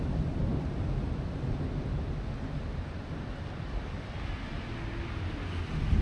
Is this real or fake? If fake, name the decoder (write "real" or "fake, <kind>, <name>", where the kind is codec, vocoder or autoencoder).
real